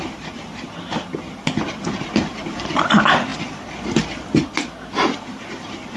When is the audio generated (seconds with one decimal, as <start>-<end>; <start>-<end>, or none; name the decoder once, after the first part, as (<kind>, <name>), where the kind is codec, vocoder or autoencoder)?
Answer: none